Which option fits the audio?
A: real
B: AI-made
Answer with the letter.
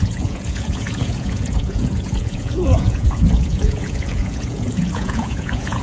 B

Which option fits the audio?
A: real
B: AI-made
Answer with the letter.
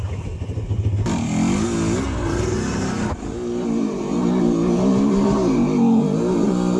A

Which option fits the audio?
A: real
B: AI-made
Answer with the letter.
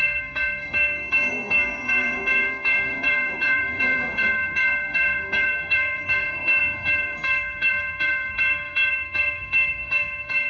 B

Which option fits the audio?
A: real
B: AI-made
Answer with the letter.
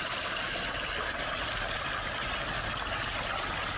A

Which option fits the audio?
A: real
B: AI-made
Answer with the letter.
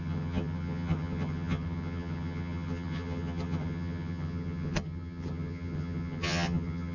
B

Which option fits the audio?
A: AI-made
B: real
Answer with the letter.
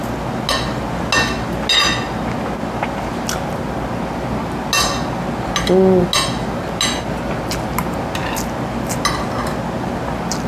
B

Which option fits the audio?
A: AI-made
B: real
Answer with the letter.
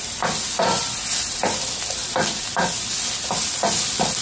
B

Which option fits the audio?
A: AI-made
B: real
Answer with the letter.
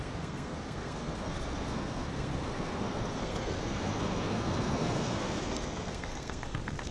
A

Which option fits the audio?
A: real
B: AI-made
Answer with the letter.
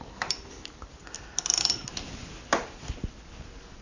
A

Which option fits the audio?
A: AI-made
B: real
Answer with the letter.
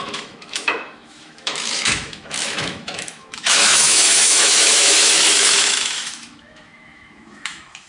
A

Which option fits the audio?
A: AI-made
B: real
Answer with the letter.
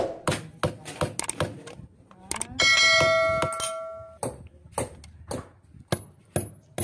B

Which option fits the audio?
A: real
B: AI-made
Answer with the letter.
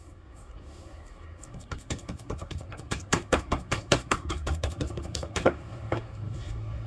B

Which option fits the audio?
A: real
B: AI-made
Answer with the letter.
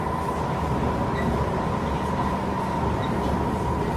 A